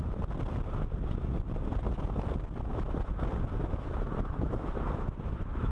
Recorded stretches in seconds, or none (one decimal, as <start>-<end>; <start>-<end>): 0.0-2.7; 3.2-3.6